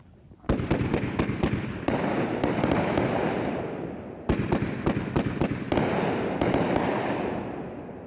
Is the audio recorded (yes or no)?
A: yes